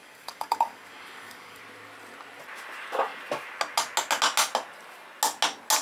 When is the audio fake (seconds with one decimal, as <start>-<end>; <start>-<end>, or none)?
0.0-1.6